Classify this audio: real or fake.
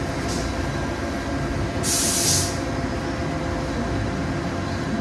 real